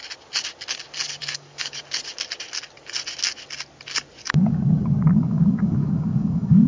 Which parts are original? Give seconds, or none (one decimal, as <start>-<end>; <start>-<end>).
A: 0.0-1.2; 1.8-4.2

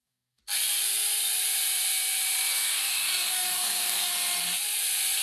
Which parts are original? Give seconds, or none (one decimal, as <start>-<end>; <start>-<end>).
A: 0.4-2.5; 4.1-5.2

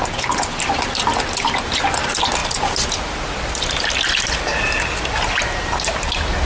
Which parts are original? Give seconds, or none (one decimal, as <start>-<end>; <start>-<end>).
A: 0.0-6.5